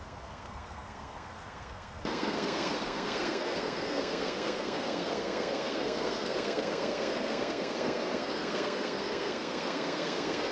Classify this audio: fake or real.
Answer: fake